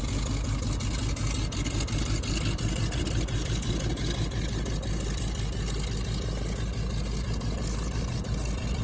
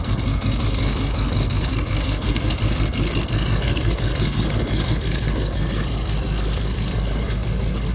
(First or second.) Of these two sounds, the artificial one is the second